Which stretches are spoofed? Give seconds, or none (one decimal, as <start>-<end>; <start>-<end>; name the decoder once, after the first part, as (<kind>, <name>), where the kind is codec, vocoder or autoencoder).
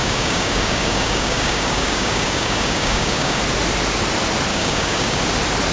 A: 0.0-3.4 (codec, DAC); 4.5-5.2